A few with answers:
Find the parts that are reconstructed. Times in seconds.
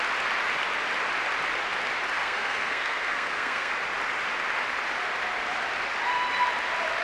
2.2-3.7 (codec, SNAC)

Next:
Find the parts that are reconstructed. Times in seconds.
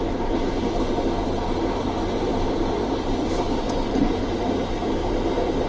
2.3-4.2 (vocoder, BigVGAN v2); 5.0-5.7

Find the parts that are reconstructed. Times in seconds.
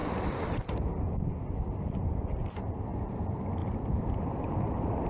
2.6-5.1 (vocoder, BigVGAN v2)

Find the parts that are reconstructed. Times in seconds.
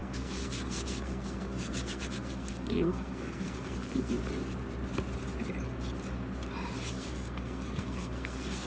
0.0-4.2 (codec, SNAC); 6.9-8.7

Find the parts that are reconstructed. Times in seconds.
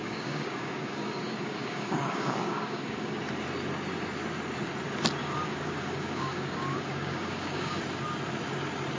0.0-3.2 (codec, DAC); 5.2-7.8